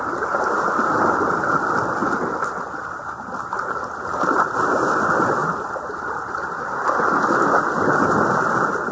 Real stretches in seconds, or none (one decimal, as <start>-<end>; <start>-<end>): 0.0-8.9